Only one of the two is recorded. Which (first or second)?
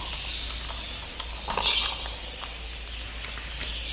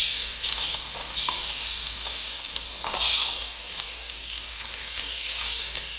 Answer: first